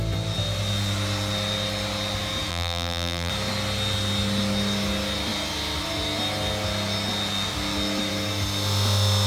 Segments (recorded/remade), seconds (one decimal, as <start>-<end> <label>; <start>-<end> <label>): 0.0-2.5 recorded; 2.5-3.3 remade; 3.3-9.3 recorded